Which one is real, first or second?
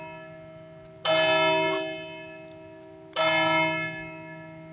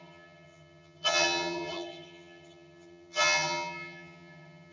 first